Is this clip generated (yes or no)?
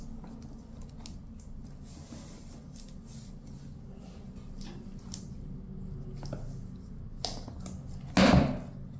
no